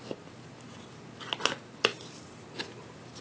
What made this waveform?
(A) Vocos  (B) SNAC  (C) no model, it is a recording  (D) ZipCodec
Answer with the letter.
C